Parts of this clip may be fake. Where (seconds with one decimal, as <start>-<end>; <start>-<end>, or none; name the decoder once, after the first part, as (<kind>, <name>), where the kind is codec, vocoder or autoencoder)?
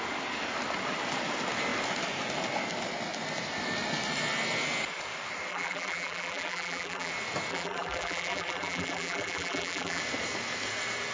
5.5-7.1 (vocoder, BigVGAN v2); 7.5-10.0